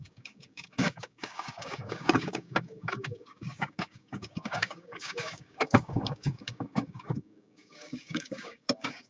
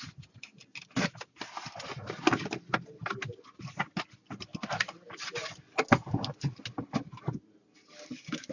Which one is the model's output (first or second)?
first